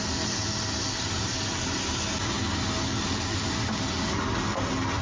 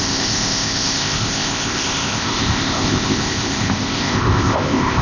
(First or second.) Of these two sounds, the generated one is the second